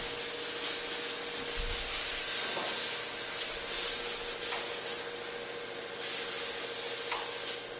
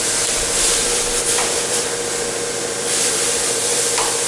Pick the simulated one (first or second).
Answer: second